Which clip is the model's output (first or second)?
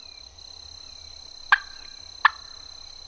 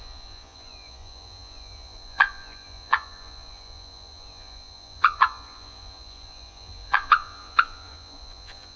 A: second